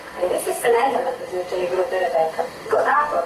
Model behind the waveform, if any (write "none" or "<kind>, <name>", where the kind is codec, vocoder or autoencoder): codec, SNAC